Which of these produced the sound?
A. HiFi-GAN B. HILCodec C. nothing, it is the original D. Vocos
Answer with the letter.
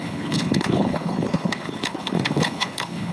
B